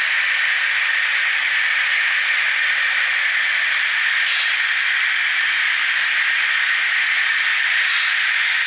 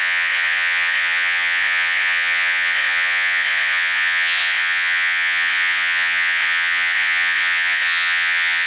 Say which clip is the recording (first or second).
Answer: first